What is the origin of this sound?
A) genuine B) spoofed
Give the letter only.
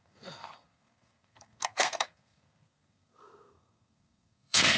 B